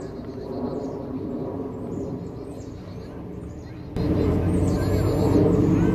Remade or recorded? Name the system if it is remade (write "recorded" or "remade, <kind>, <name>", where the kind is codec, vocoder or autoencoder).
recorded